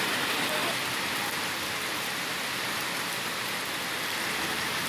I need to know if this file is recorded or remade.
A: recorded